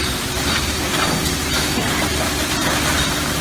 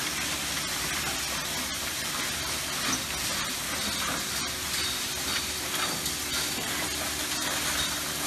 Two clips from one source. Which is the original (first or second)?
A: second